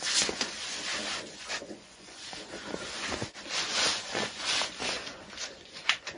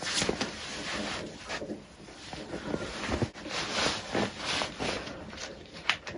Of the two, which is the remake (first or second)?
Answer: first